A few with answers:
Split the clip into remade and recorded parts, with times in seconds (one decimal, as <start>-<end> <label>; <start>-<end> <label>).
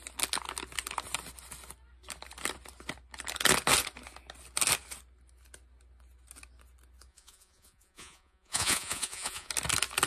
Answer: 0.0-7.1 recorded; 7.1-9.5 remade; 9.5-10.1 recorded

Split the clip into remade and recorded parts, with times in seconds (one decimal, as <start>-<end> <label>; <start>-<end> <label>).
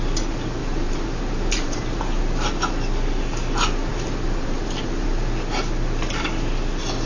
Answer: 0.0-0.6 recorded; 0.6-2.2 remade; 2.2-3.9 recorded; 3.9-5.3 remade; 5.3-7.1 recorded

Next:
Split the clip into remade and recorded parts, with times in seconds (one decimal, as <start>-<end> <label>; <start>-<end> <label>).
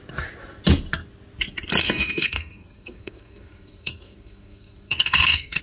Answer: 0.0-1.8 recorded; 1.8-5.6 remade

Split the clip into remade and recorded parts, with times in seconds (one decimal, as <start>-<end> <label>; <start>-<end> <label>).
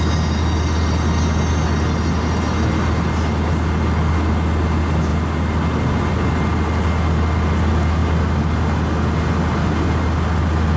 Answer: 0.0-10.8 recorded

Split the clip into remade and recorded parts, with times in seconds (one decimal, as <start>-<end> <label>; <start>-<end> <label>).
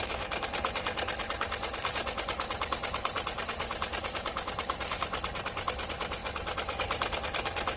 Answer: 0.0-7.8 recorded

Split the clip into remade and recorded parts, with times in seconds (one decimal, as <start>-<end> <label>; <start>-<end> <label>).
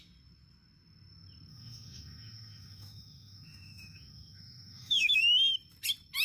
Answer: 0.0-1.5 recorded; 1.5-5.2 remade; 5.2-6.2 recorded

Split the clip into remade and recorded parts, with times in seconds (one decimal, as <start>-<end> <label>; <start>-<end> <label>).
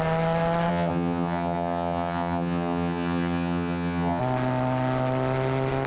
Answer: 0.0-0.7 recorded; 0.7-4.2 remade; 4.2-5.9 recorded